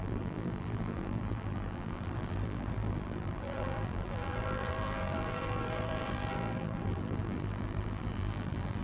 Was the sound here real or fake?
fake